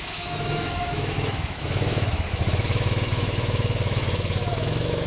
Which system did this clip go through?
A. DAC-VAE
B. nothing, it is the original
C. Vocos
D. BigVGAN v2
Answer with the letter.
A